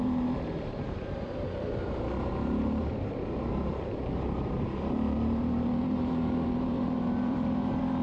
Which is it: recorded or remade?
remade